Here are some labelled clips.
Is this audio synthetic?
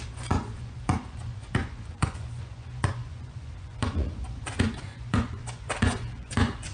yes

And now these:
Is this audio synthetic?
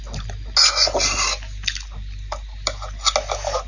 no